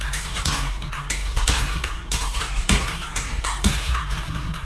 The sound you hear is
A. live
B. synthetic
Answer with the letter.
B